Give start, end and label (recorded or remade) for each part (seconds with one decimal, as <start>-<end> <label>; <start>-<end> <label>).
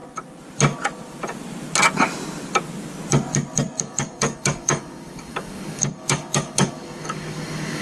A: 0.0-3.8 recorded; 3.8-7.8 remade